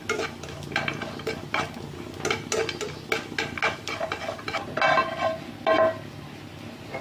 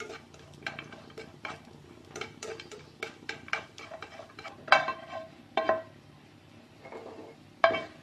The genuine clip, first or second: first